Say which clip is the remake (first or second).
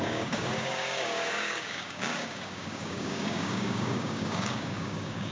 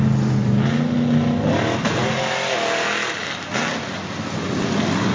first